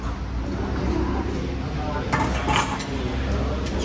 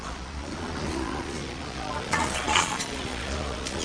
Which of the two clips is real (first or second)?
first